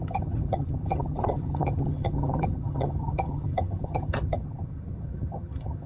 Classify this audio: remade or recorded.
remade